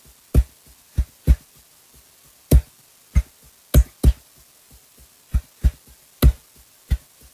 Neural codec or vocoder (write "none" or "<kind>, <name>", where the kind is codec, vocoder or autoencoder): none